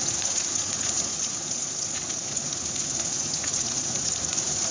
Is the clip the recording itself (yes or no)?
no